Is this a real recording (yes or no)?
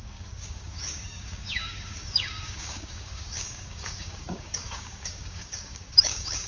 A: no